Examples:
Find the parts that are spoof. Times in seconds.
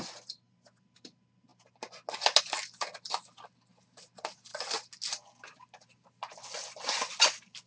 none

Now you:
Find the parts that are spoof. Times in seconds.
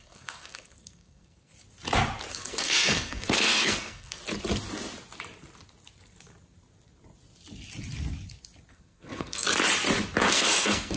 0.0-1.5; 2.3-4.2; 8.7-9.5; 10.3-11.0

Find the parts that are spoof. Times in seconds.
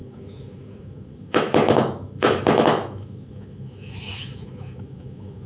0.0-5.5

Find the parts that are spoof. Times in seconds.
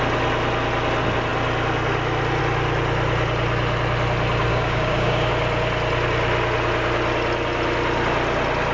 4.5-5.3